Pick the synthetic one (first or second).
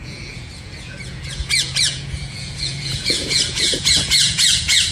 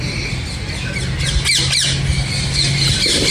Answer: first